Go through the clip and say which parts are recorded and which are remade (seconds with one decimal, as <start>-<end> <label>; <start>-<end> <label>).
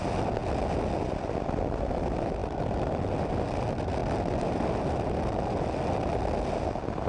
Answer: 0.0-7.1 recorded